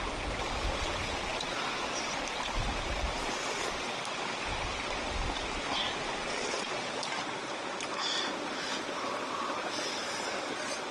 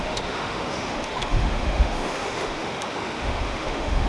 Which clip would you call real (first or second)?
first